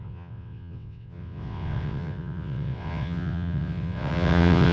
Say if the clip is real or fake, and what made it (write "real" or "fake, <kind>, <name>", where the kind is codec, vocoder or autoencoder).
fake, vocoder, WaveNeXt